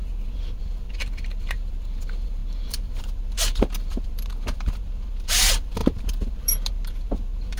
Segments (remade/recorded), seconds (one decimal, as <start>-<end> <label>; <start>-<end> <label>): 0.0-0.6 recorded; 0.6-7.6 remade

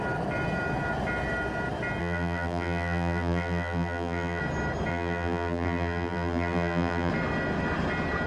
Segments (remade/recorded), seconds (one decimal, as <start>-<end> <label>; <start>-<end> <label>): 0.0-2.0 recorded; 2.0-4.4 remade; 4.4-4.9 recorded; 4.9-7.1 remade; 7.1-8.3 recorded

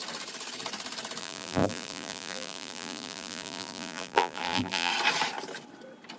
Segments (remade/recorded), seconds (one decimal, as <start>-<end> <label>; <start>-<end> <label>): 0.0-1.2 recorded; 1.2-4.9 remade; 4.9-6.2 recorded

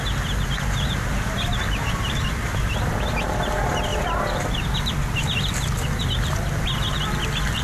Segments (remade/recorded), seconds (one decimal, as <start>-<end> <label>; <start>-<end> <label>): 0.0-7.6 recorded

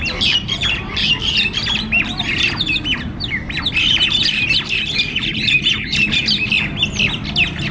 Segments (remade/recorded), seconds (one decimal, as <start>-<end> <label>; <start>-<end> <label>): 0.0-2.1 remade; 2.1-3.9 recorded; 3.9-6.5 remade; 6.5-7.7 recorded

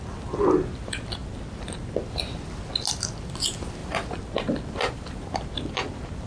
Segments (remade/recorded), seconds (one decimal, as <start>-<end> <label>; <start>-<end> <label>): 0.0-3.8 recorded; 3.8-6.3 remade

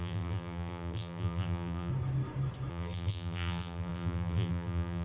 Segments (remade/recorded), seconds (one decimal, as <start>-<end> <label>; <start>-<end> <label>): 0.0-1.9 remade; 1.9-2.7 recorded; 2.7-5.0 remade

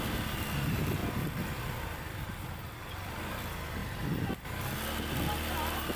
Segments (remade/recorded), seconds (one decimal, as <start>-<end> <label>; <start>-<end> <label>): 0.0-1.0 recorded; 1.0-2.8 remade; 2.8-6.0 recorded